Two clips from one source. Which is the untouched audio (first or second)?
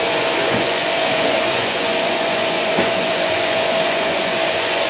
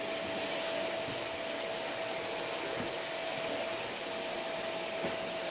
second